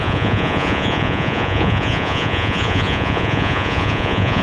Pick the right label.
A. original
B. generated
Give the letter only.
B